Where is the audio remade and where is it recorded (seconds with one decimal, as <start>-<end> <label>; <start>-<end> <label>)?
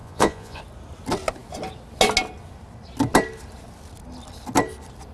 0.0-0.6 remade; 0.6-5.1 recorded